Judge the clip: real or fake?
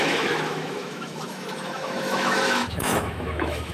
fake